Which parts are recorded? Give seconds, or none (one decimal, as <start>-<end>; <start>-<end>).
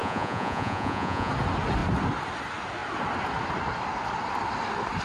1.3-5.0